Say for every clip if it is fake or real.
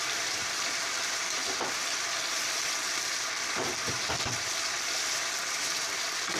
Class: fake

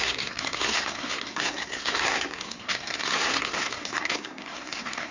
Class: fake